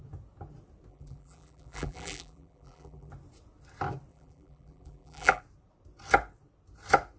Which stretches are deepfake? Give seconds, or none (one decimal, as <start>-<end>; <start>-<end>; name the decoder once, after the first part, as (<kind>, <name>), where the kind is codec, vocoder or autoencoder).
0.9-3.1 (vocoder, BigVGAN v2); 4.1-5.4